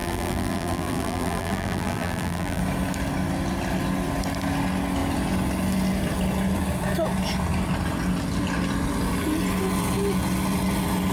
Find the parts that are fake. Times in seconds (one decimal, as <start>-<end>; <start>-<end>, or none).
0.0-2.6